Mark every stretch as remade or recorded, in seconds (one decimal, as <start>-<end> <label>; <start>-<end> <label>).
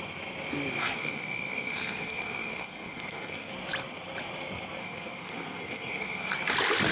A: 0.0-0.8 recorded; 0.8-3.5 remade; 3.5-4.8 recorded; 4.8-6.3 remade; 6.3-6.9 recorded